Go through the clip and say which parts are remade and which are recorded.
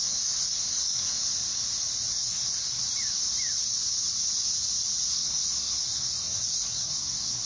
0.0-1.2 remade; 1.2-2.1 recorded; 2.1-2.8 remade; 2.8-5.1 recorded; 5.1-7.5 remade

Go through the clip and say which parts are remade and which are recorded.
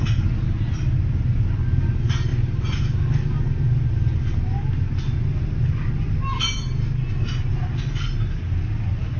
0.0-9.2 recorded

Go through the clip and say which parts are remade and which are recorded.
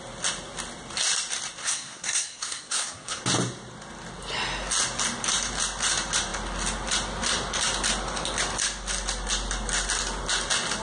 0.0-1.6 recorded; 1.6-3.2 remade; 3.2-10.8 recorded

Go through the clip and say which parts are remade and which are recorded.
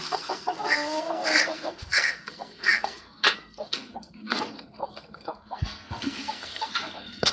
0.0-7.3 remade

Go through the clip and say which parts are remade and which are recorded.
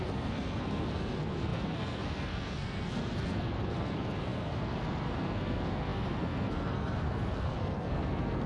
0.0-8.5 remade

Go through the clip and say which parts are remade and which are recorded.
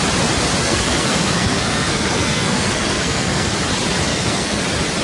0.0-0.6 recorded; 0.6-3.5 remade; 3.5-4.1 recorded; 4.1-4.6 remade; 4.6-5.0 recorded